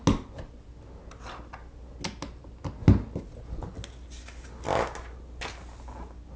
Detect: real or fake real